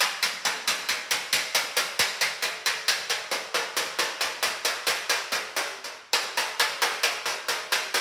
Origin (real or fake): real